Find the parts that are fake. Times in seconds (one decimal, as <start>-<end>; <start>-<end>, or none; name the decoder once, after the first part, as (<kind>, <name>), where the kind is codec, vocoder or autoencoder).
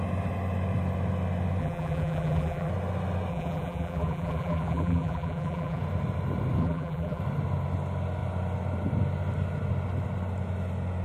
1.6-2.7 (vocoder, BigVGAN v2); 3.3-5.8; 6.6-7.2